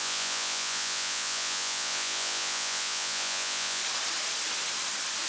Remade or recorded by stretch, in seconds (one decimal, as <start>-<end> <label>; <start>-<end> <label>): 0.0-3.8 remade; 3.8-5.3 recorded